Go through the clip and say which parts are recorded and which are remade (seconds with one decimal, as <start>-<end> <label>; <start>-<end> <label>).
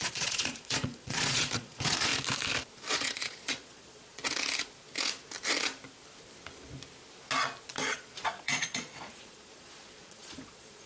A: 0.0-2.1 remade; 2.1-2.9 recorded; 2.9-4.2 remade; 4.2-7.7 recorded; 7.7-10.9 remade